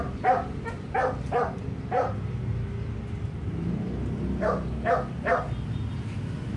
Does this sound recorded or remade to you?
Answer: recorded